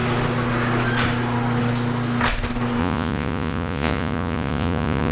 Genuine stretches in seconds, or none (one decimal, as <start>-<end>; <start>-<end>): 0.0-2.8